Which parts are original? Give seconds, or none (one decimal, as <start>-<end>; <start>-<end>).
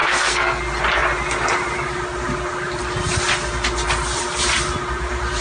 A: 0.6-5.4